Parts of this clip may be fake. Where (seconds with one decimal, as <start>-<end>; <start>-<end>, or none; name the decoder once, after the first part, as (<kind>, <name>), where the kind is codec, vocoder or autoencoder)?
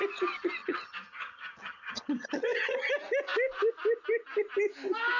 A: 0.6-2.9 (vocoder, HiFi-GAN)